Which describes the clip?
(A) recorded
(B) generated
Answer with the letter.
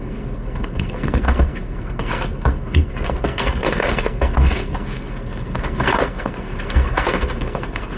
B